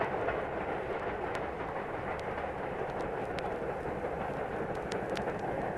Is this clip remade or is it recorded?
recorded